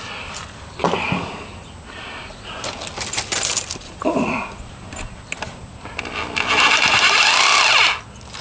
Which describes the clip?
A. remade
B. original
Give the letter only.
B